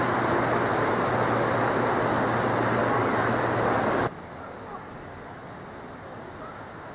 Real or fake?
real